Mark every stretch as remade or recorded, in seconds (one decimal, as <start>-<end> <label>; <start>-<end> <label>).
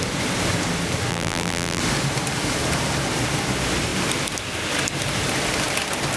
0.0-1.1 recorded; 1.1-1.8 remade; 1.8-6.2 recorded